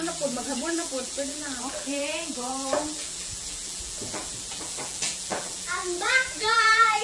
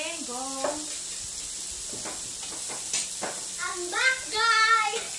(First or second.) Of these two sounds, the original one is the second